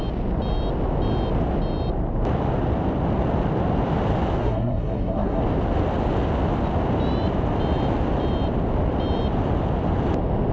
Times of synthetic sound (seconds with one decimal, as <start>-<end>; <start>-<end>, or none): 4.4-5.4